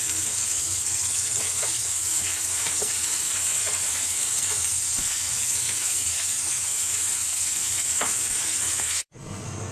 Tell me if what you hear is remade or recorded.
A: remade